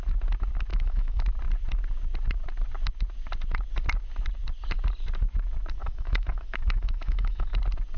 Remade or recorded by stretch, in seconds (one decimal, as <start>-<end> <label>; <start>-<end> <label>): 0.0-0.7 recorded; 0.7-1.3 remade; 1.3-5.8 recorded; 5.8-7.6 remade; 7.6-8.0 recorded